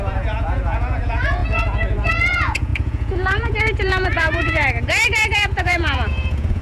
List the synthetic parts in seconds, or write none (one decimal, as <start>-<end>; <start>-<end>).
0.0-6.6